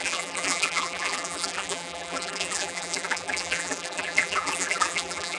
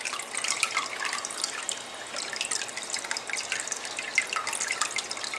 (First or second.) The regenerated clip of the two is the first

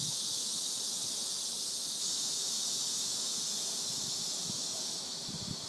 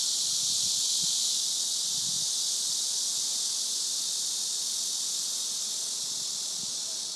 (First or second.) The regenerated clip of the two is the first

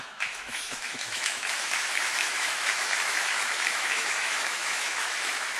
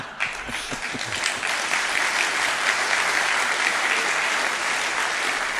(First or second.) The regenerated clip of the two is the first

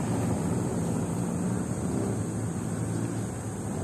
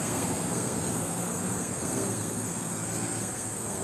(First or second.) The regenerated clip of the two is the second